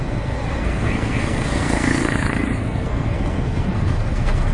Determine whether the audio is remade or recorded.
remade